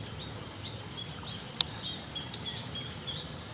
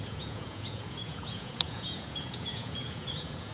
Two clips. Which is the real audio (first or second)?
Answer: first